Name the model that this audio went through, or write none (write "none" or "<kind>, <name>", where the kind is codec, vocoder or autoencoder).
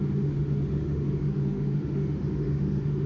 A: autoencoder, DAC-VAE